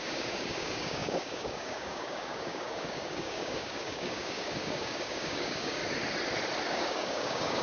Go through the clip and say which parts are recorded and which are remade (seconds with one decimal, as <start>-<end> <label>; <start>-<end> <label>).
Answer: 0.0-5.8 remade; 5.8-6.7 recorded; 6.7-7.6 remade